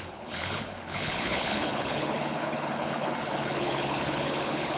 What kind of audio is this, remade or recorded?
remade